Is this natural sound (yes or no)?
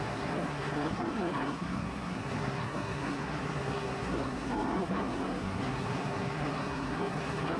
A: no